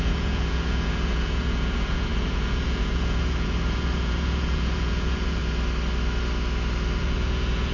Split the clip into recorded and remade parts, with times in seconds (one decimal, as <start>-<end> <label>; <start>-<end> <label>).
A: 0.0-5.4 remade; 5.4-7.0 recorded; 7.0-7.7 remade